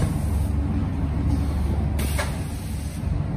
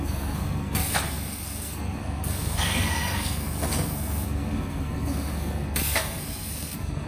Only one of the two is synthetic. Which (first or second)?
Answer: second